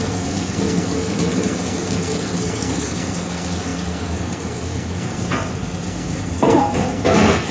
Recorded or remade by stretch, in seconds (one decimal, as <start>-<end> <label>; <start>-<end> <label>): 0.0-7.5 remade